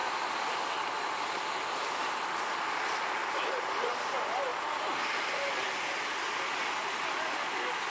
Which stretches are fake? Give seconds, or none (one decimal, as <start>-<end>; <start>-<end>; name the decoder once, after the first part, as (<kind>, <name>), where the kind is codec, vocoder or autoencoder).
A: 0.0-0.6 (vocoder, BigVGAN v2)